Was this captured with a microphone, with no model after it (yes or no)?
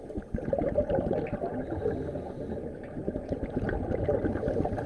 yes